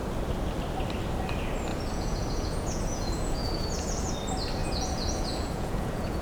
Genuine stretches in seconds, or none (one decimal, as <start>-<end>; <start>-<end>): 0.0-1.7; 4.1-4.6